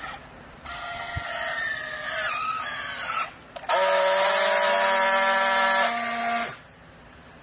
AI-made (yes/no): no